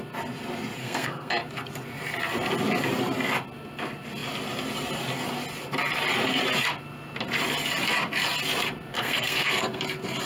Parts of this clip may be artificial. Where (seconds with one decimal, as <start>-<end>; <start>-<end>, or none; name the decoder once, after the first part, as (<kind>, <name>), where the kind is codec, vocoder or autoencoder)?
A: 0.8-1.3 (codec, SNAC); 8.9-9.8